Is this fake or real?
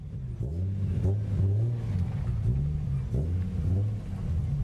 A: real